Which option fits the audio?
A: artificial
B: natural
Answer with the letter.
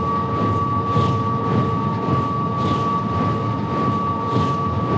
B